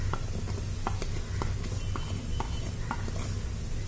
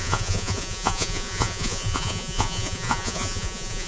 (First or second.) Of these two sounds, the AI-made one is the second